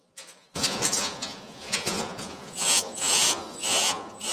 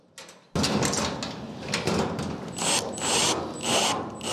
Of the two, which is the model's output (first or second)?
first